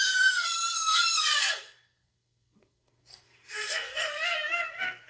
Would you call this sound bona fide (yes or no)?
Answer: no